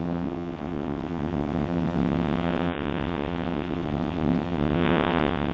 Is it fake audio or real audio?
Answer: fake